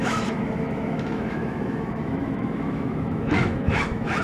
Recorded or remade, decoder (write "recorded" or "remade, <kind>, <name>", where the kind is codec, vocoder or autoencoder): remade, autoencoder, DAC-VAE